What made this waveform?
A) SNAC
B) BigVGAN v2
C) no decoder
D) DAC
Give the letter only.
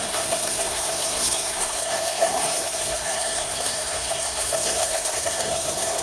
A